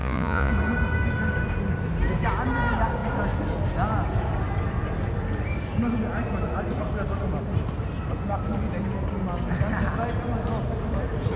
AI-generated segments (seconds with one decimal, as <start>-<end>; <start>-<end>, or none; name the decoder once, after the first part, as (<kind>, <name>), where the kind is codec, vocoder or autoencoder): 0.0-0.5 (vocoder, Vocos)